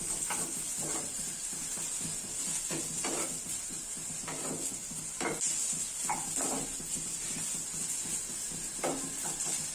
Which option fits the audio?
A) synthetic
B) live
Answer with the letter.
B